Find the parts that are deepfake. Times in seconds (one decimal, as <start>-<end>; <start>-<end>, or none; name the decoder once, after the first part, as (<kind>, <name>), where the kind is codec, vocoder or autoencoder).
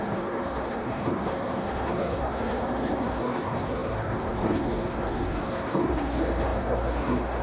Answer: 0.0-7.4 (codec, SNAC)